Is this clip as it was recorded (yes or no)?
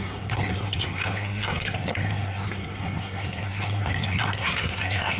no